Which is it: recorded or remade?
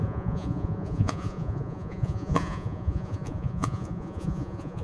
remade